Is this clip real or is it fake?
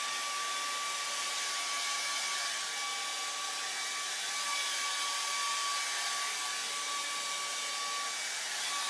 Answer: real